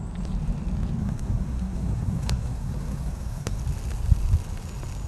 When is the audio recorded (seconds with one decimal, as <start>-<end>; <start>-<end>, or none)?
0.0-1.0; 3.6-5.1